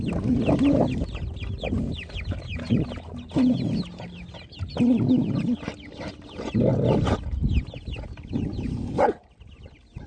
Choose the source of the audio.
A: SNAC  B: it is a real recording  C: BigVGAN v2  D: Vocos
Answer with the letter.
B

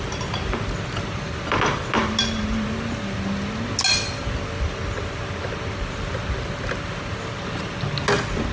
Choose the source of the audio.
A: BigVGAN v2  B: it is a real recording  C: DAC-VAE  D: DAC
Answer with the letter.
B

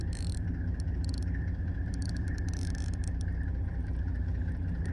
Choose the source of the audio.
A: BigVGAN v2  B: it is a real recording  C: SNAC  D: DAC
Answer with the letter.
A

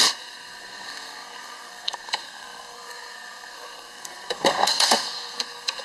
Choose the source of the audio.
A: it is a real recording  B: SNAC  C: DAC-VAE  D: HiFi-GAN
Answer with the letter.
B